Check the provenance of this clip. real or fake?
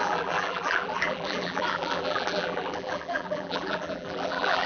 fake